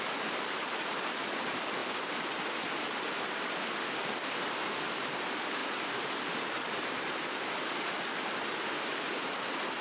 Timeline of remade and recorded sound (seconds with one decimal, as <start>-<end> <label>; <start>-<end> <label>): 0.0-9.8 recorded